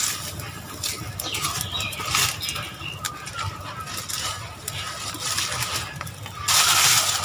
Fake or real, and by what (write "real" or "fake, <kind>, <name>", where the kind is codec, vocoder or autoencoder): real